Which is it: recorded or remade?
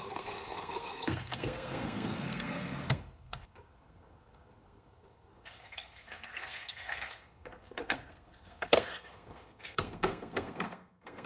remade